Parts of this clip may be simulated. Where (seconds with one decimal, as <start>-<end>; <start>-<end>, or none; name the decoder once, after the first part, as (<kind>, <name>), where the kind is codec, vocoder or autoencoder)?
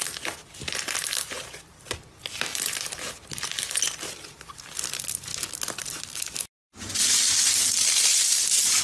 2.5-4.8 (vocoder, BigVGAN v2)